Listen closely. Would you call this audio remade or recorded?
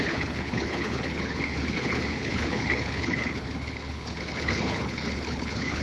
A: remade